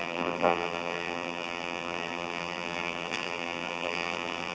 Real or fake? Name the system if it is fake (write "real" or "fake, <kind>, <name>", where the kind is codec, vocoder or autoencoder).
fake, vocoder, BigVGAN v2